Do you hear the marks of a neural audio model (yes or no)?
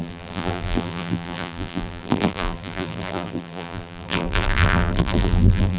yes